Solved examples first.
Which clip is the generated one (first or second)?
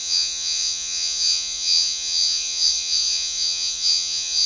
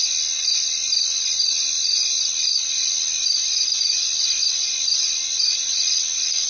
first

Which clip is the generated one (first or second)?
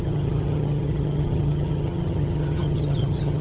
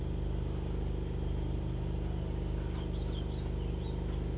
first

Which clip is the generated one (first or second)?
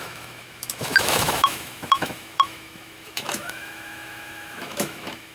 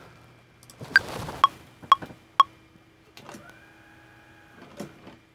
first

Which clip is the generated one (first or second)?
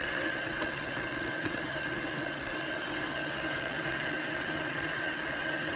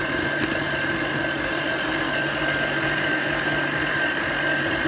first